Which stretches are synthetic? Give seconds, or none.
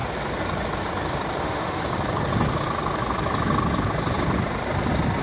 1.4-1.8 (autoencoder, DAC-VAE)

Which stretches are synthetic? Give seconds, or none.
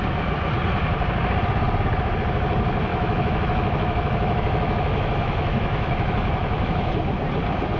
2.9-6.9 (autoencoder, DAC-VAE)